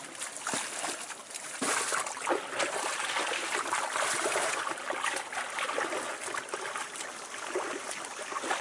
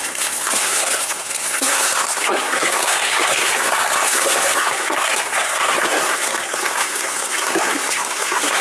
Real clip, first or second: first